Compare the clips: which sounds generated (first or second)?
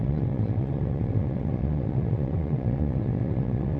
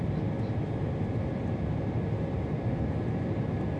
first